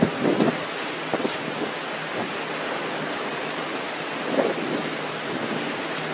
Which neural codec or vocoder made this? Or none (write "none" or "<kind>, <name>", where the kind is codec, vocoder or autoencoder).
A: none